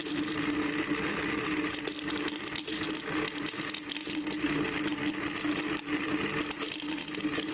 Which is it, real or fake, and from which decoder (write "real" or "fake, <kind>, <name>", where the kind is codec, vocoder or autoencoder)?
real